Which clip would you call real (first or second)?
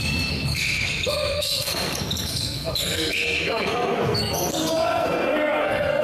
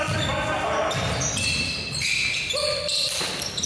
second